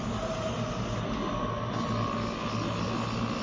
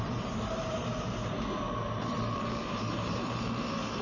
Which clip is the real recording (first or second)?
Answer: first